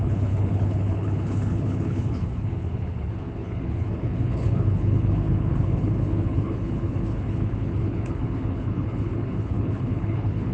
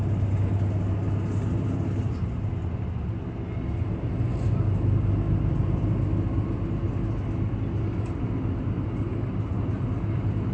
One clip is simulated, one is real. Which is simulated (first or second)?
first